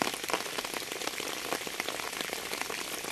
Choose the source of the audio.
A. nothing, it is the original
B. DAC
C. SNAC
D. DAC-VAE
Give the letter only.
A